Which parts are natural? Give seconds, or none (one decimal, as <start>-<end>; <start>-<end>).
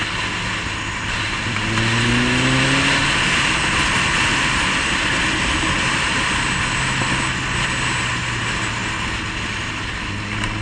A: 0.0-10.6